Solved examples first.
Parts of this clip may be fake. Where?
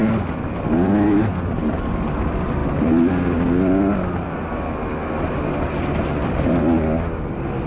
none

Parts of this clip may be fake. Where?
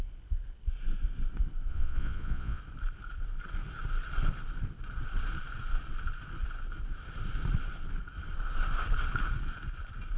1.7-2.6 (vocoder, Vocos)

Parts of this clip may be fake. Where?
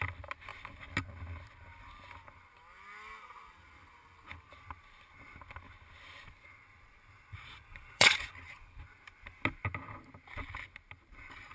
7.3-8.3 (vocoder, Vocos)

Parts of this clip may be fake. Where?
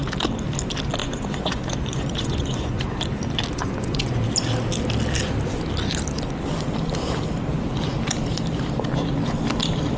1.0-3.0 (vocoder, Vocos); 3.5-4.2